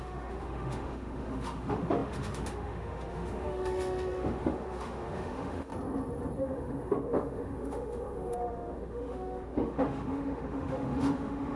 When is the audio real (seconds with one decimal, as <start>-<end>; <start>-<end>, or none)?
5.7-6.4